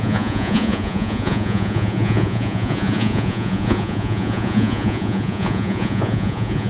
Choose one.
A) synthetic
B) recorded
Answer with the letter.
A